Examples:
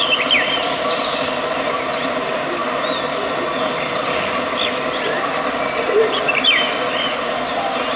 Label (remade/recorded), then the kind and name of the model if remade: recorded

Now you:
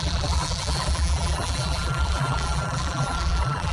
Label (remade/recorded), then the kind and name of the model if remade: remade, vocoder, BigVGAN v2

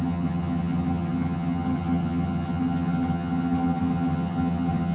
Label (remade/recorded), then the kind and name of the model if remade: remade, vocoder, HiFi-GAN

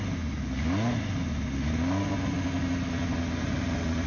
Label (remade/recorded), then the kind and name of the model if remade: recorded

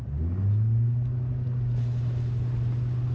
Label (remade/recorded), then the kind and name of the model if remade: recorded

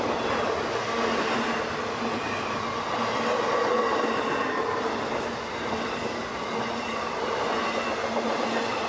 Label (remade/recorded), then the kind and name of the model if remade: recorded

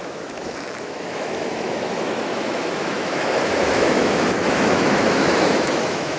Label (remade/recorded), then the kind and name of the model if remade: remade, autoencoder, DAC-VAE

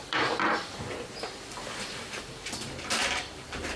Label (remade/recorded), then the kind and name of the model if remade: remade, vocoder, BigVGAN v2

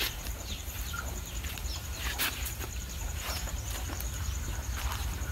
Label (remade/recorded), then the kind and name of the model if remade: remade, vocoder, BigVGAN v2